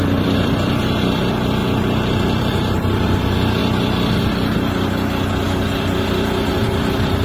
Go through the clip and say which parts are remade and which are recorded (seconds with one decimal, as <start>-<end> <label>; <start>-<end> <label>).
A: 0.0-1.6 remade; 1.6-2.4 recorded; 2.4-3.6 remade; 3.6-6.5 recorded; 6.5-7.2 remade